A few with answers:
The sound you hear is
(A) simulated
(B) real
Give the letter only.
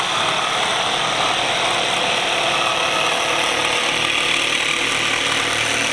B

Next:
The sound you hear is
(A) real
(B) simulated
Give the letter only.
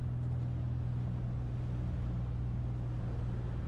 A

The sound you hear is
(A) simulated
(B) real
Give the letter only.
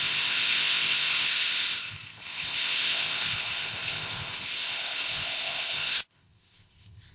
A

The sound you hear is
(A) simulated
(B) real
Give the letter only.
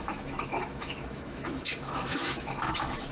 A